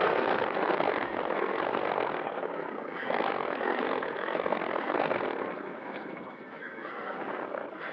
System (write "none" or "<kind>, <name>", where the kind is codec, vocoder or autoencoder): codec, SNAC